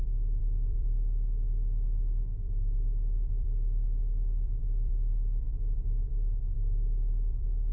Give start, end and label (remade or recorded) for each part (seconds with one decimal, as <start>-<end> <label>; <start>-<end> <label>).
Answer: 0.0-7.7 remade